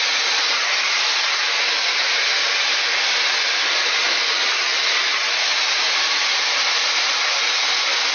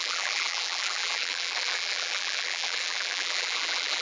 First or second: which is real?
first